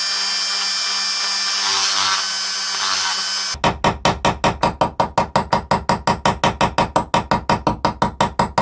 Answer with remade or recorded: recorded